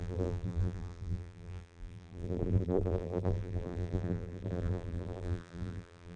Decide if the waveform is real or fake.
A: fake